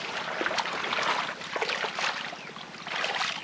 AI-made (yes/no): no